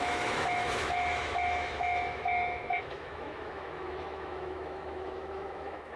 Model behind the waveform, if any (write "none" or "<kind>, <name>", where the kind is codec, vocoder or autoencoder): autoencoder, DAC-VAE